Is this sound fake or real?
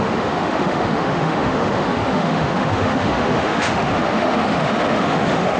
fake